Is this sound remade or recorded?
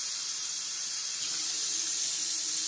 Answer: recorded